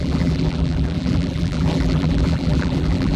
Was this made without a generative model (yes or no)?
no